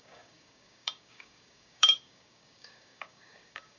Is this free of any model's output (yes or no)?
no